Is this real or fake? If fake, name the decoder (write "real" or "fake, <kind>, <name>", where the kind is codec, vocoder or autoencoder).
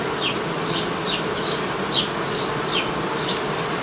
real